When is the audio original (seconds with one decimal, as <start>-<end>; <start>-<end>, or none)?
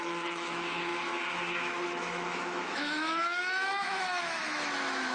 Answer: none